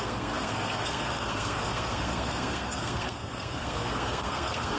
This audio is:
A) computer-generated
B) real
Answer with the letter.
A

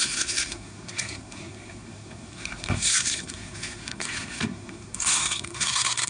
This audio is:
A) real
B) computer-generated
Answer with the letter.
B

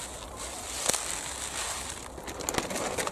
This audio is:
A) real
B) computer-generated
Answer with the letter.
A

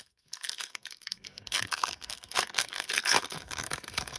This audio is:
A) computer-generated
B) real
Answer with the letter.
A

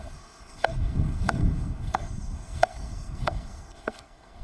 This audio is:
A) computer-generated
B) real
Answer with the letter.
A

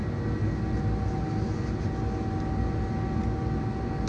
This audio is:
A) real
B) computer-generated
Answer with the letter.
A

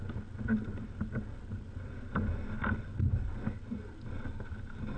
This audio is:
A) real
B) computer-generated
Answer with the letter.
A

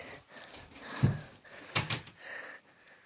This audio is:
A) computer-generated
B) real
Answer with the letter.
B